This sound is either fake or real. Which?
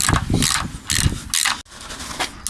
real